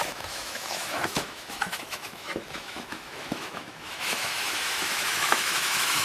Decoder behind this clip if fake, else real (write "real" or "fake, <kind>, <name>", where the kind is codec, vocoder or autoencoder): fake, autoencoder, DAC-VAE